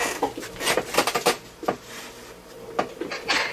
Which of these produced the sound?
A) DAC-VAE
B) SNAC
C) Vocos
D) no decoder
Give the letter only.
D